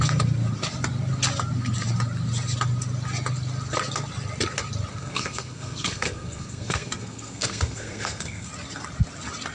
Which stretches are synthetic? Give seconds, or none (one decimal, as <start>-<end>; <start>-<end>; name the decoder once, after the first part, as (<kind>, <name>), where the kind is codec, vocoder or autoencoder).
4.9-8.5 (codec, SNAC)